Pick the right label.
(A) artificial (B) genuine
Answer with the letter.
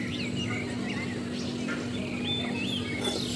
B